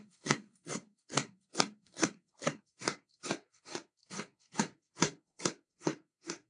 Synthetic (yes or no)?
yes